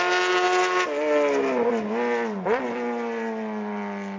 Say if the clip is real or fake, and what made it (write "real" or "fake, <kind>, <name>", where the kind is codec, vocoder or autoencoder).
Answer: real